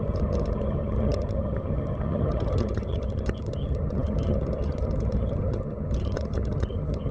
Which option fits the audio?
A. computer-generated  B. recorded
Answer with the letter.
A